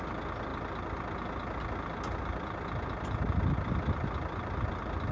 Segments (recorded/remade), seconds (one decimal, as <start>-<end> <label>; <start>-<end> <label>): 0.0-5.1 recorded